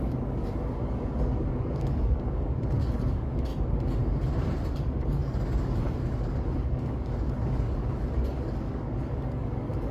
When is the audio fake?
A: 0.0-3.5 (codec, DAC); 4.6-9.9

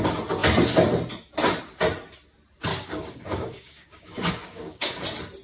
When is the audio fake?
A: 2.7-5.0 (codec, DAC)

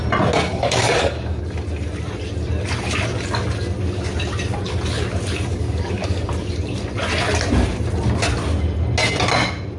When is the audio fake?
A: 0.5-1.4 (codec, DAC); 5.5-6.3